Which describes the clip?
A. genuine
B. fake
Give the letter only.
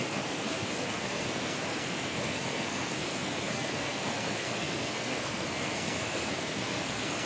B